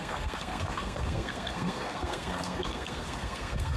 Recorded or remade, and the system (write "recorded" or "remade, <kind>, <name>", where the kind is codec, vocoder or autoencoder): remade, codec, SNAC